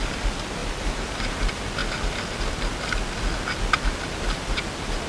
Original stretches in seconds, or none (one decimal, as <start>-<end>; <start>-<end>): 0.0-0.6; 1.2-5.1